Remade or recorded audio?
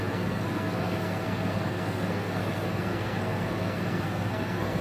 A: remade